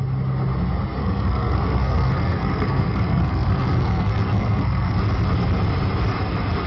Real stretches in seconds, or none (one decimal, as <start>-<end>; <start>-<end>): 0.0-1.0; 5.0-6.7